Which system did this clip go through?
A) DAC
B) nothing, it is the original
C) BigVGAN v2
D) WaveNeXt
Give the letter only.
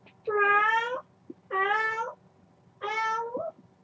B